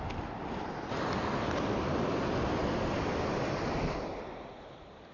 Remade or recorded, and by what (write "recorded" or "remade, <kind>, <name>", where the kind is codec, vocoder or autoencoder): recorded